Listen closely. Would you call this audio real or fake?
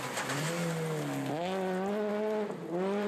real